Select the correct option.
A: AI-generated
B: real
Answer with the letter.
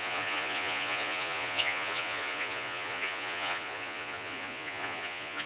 A